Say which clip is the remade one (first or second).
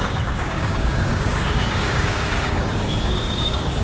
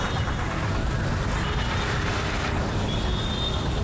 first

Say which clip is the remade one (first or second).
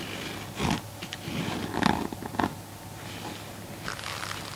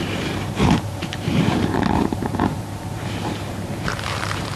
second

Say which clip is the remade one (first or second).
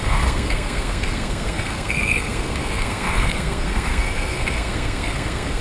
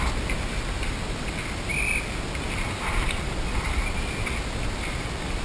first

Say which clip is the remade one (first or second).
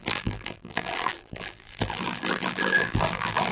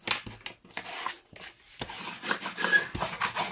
first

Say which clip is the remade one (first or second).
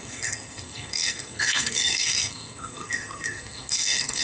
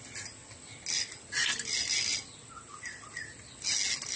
first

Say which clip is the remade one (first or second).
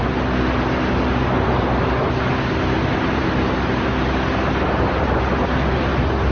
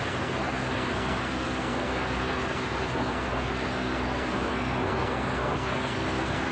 second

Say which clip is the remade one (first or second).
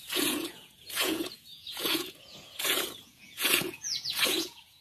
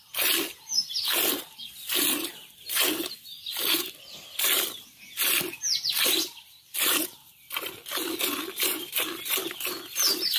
first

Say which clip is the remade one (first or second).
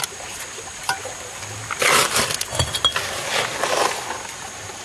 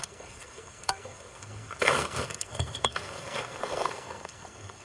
second